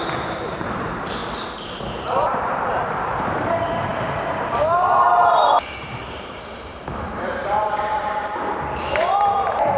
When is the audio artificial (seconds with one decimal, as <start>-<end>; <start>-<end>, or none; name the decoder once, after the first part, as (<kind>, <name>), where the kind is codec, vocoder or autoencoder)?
0.0-1.2 (vocoder, BigVGAN v2); 1.8-9.8